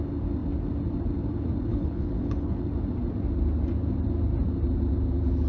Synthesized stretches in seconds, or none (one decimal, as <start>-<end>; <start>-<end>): 1.7-2.6